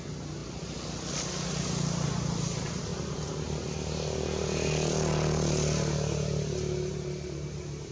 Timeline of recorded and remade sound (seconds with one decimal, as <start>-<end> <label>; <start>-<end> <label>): 0.0-7.9 recorded